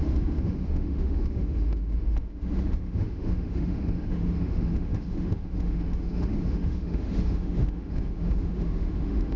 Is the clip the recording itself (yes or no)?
no